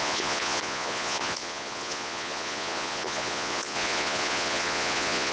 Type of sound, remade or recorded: remade